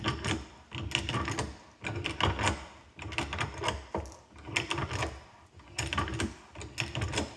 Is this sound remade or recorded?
recorded